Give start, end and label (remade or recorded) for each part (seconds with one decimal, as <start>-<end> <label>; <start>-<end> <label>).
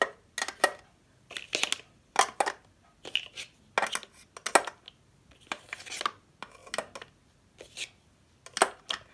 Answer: 0.0-9.1 recorded